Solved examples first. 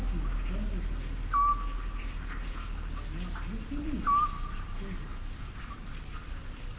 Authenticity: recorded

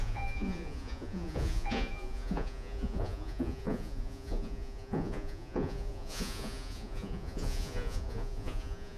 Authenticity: remade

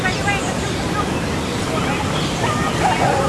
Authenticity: recorded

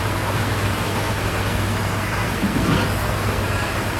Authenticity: remade